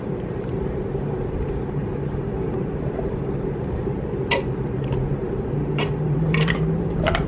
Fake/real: fake